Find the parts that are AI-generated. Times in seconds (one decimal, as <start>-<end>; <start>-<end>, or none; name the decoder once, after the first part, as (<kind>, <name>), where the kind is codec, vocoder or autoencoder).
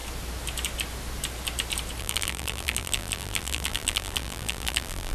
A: 2.0-5.1 (vocoder, BigVGAN v2)